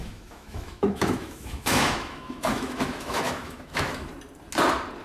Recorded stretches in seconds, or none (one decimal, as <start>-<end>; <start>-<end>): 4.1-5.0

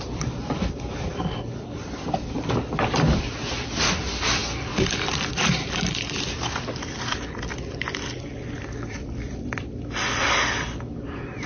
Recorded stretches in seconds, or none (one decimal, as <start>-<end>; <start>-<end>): none

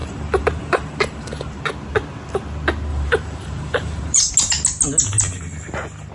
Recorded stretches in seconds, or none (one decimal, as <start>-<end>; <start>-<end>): 1.6-2.9; 4.3-6.1

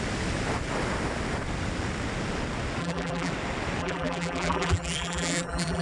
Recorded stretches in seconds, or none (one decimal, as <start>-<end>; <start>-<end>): 0.0-2.8; 3.3-3.8